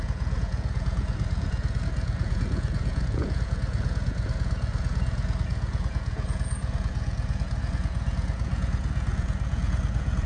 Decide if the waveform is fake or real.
fake